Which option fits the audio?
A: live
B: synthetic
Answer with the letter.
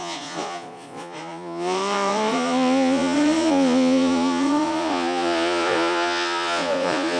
B